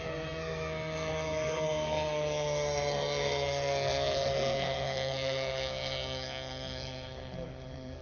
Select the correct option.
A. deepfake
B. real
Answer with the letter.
A